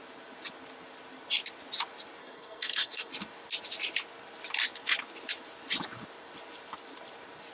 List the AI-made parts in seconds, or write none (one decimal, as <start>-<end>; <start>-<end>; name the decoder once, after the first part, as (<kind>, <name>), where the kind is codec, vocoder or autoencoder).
2.2-3.1 (codec, SNAC)